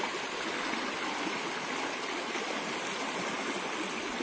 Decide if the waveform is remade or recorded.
recorded